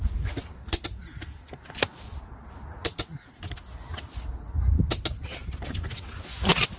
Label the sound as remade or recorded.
recorded